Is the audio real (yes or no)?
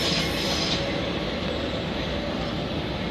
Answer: yes